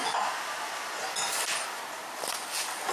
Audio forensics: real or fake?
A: real